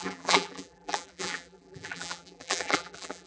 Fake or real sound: fake